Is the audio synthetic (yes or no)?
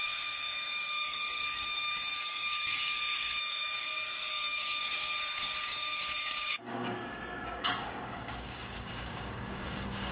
yes